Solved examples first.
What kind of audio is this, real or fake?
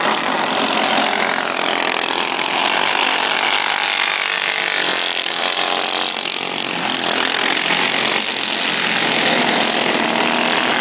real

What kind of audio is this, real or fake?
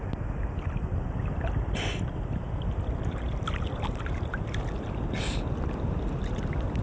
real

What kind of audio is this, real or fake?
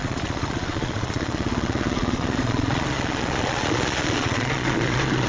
fake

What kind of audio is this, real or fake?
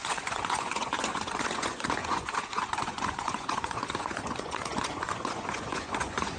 fake